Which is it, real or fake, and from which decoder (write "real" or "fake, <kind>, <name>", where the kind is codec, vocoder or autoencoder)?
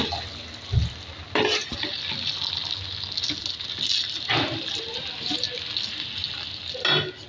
real